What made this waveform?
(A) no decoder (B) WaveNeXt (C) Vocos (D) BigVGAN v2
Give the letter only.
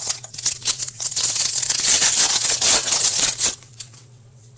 B